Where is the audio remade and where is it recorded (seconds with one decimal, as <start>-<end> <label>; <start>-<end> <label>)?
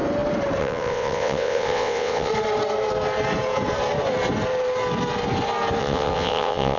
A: 0.0-0.6 recorded; 0.6-2.3 remade; 2.3-5.8 recorded; 5.8-6.8 remade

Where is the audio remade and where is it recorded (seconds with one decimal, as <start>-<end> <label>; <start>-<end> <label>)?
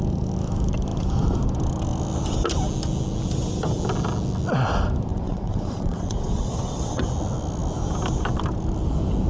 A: 0.0-5.1 recorded; 5.1-7.0 remade; 7.0-9.3 recorded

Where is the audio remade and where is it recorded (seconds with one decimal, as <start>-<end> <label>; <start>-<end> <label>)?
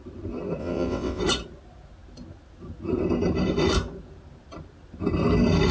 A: 0.0-0.6 recorded; 0.6-1.2 remade; 1.2-5.7 recorded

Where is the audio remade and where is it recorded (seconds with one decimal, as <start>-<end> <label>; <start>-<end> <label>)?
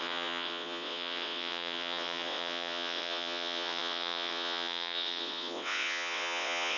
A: 0.0-6.8 remade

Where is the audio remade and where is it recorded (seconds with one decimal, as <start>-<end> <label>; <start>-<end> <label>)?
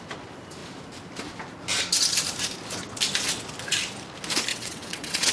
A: 0.0-4.5 recorded; 4.5-5.3 remade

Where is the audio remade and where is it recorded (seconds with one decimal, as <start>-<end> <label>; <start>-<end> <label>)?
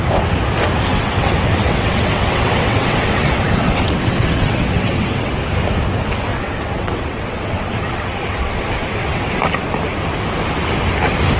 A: 0.0-0.9 recorded; 0.9-5.3 remade; 5.3-6.3 recorded; 6.3-9.3 remade; 9.3-11.4 recorded